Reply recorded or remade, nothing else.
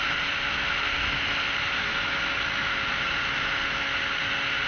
recorded